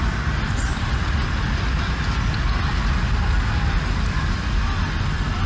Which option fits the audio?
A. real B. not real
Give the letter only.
A